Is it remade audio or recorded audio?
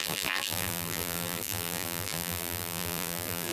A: remade